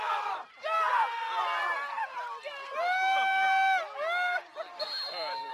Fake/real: real